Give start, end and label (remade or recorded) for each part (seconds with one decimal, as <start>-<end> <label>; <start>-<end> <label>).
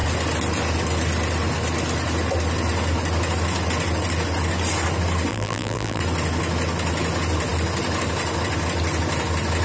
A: 0.0-5.3 recorded; 5.3-6.0 remade; 6.0-9.6 recorded